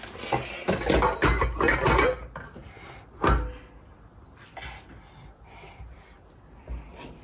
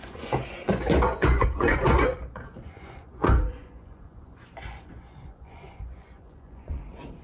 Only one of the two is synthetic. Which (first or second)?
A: second